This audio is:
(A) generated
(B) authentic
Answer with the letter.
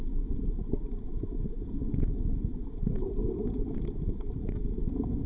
B